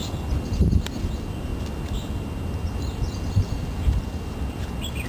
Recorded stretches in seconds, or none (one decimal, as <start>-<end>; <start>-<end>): 0.0-5.1